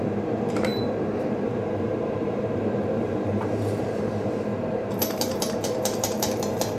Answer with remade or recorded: remade